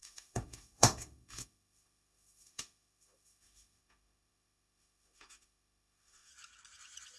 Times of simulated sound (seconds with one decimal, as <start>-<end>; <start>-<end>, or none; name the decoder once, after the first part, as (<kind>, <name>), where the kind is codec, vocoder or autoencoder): 0.0-6.3 (autoencoder, DAC-VAE)